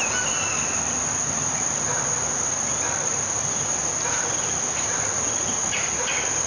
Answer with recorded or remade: recorded